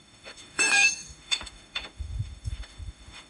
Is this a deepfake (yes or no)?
yes